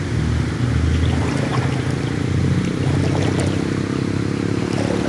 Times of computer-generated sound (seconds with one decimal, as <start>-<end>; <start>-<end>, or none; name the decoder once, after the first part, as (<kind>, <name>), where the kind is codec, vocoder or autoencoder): none